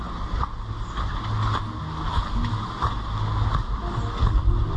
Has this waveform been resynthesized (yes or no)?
no